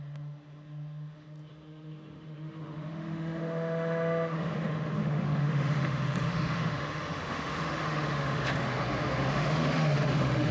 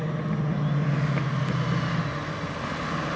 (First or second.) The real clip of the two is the second